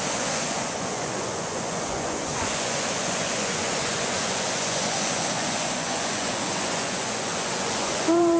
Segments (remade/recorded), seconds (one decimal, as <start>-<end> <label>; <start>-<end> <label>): 0.0-8.4 remade